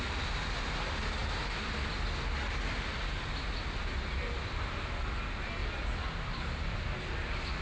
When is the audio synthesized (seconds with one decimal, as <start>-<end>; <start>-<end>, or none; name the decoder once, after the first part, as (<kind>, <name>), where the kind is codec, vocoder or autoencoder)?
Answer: none